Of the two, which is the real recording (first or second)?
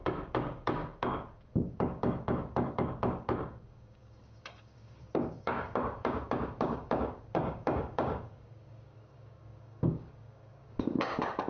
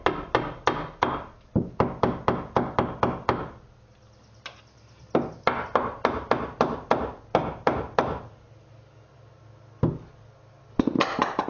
second